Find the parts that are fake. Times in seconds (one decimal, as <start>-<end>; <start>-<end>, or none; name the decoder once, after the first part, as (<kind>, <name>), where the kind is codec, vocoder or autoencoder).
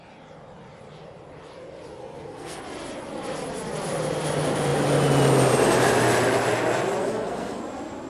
2.0-2.6 (codec, SNAC); 7.0-7.6